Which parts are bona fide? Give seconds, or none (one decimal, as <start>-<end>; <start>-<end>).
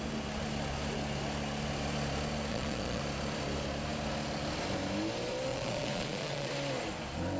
0.0-2.5; 3.0-5.5; 6.5-7.4